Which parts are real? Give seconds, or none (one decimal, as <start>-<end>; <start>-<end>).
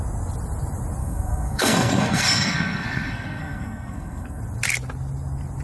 0.0-1.0; 4.4-5.6